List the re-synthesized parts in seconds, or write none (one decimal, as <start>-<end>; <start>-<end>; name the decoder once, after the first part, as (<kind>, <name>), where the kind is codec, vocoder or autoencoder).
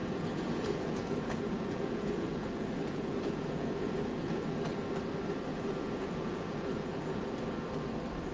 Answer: 0.0-4.8 (vocoder, Vocos); 5.5-7.3